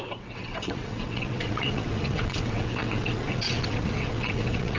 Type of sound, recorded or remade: remade